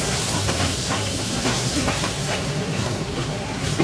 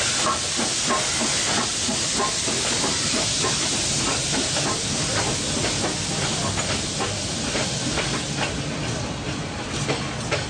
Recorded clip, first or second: second